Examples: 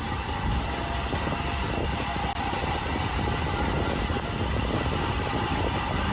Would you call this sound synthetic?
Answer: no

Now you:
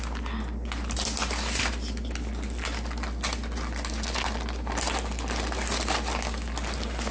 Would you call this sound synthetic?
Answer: no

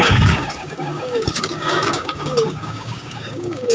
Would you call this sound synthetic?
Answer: yes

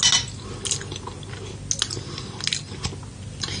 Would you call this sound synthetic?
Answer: no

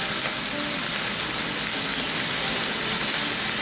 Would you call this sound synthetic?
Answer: no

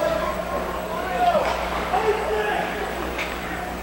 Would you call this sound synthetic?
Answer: yes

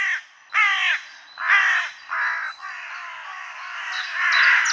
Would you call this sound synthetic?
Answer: no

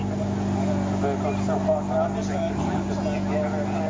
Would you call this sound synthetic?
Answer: no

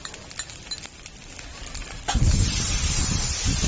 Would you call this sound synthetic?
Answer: no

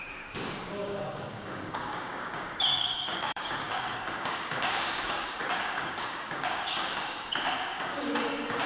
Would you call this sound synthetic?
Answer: yes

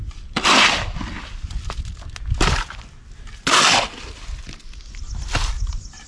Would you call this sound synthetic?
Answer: no